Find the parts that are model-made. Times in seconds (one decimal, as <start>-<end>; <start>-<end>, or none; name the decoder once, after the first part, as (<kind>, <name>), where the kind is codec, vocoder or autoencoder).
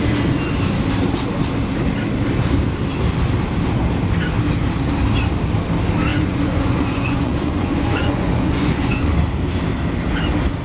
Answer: 6.1-9.1 (vocoder, Vocos)